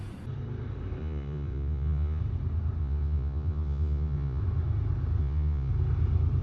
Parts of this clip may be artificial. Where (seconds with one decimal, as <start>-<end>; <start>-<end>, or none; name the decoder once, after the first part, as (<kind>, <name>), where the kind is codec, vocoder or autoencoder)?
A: 1.0-2.2 (vocoder, Vocos); 2.8-4.4; 5.2-5.7